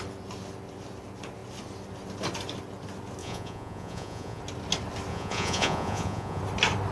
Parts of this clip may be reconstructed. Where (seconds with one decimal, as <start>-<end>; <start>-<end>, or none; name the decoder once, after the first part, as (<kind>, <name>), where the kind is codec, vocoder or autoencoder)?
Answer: 3.2-4.4 (vocoder, Vocos); 5.1-6.4